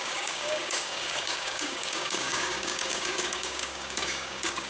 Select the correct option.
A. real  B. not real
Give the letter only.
B